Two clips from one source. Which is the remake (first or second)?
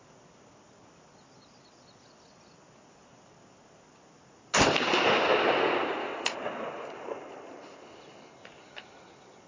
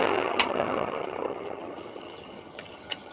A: second